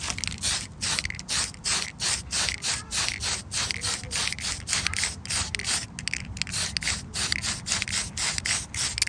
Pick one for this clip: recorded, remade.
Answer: recorded